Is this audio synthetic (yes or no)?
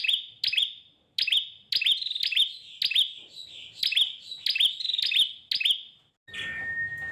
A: no